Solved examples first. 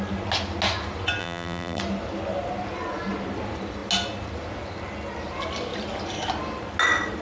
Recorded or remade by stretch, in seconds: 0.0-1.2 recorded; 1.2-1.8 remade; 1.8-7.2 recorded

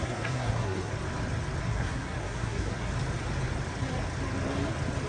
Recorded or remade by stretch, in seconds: 0.0-0.9 remade; 0.9-1.6 recorded; 1.6-2.9 remade; 2.9-5.1 recorded

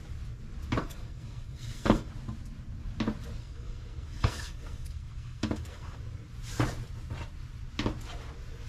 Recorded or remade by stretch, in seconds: 0.0-0.8 recorded; 0.8-2.1 remade; 2.1-3.4 recorded; 3.4-6.0 remade; 6.0-8.7 recorded

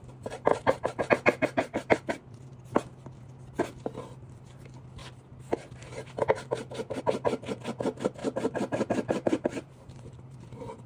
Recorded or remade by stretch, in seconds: 0.0-0.5 recorded; 0.5-1.1 remade; 1.1-8.2 recorded; 8.2-10.9 remade

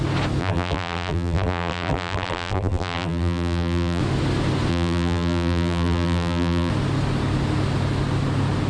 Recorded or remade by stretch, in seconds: 0.0-0.4 recorded; 0.4-4.0 remade; 4.0-4.7 recorded; 4.7-6.7 remade; 6.7-8.7 recorded

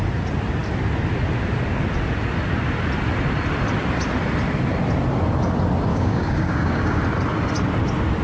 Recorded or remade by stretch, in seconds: 0.0-5.9 recorded; 5.9-7.0 remade; 7.0-8.2 recorded

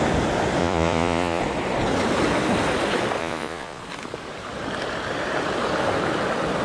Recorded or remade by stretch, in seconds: 0.0-0.6 recorded; 0.6-1.4 remade; 1.4-3.2 recorded; 3.2-3.8 remade; 3.8-6.6 recorded

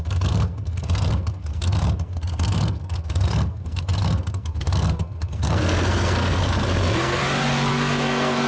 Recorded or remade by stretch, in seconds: 0.0-7.2 remade; 7.2-7.7 recorded; 7.7-8.5 remade